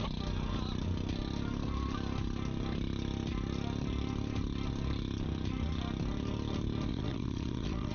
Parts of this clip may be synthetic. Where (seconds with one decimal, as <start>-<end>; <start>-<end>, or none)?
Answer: 6.9-7.9